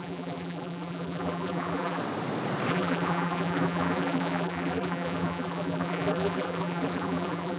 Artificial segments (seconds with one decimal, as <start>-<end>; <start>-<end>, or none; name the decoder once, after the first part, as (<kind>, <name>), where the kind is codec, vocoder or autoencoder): 0.0-2.0 (vocoder, BigVGAN v2); 2.7-7.6